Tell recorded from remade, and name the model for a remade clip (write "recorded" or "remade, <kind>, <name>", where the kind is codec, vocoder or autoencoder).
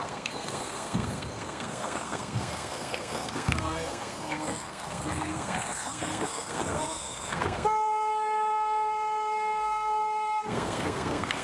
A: remade, codec, SNAC